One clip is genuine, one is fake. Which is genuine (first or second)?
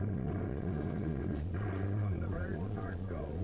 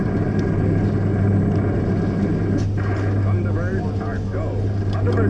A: second